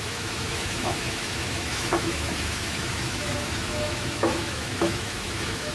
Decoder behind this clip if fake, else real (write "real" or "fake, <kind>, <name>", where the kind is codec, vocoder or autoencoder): fake, autoencoder, DAC-VAE